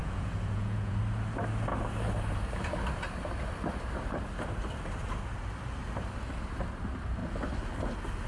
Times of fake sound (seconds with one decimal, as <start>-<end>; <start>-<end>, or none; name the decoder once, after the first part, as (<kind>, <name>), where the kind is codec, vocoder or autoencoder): 0.0-1.0 (vocoder, Vocos)